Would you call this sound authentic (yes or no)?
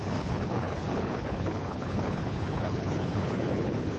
no